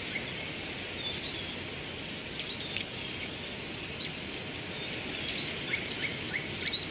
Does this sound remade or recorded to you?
recorded